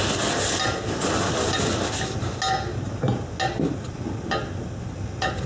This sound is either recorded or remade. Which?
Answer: recorded